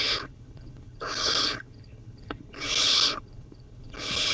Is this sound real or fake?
fake